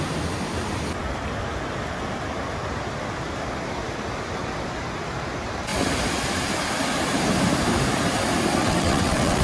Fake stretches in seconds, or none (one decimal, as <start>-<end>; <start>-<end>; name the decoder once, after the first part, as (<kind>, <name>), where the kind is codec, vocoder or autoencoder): 8.6-9.4 (vocoder, WaveNeXt)